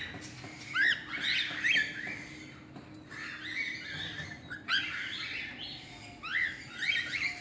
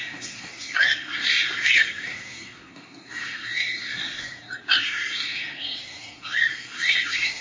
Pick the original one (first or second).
first